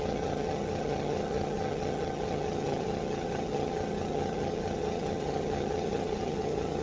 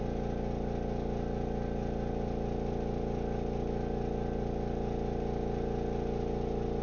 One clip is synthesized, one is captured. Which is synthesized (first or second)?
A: first